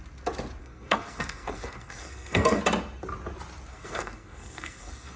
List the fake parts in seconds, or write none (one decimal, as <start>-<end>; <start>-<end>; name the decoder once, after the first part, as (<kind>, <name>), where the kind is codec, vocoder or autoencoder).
0.6-2.6 (codec, SNAC); 3.7-5.2